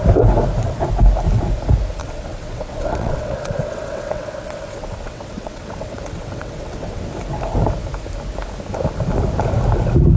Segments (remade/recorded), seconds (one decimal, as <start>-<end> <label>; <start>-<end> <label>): 0.0-2.0 recorded; 2.0-7.0 remade; 7.0-10.2 recorded